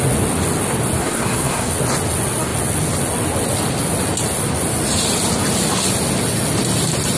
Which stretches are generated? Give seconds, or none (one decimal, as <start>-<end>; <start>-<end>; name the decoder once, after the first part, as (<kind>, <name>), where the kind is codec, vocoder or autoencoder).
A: 1.0-1.7 (codec, SNAC)